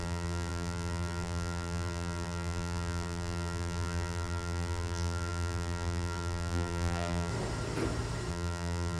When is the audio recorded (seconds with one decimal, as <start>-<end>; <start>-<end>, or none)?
7.3-8.3